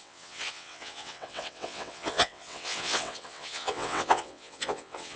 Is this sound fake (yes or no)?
yes